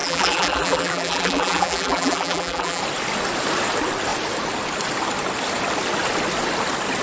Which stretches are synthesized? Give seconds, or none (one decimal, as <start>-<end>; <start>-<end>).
0.0-2.8